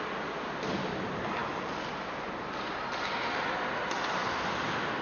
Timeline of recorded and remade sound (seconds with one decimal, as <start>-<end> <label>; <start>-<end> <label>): 0.0-5.0 recorded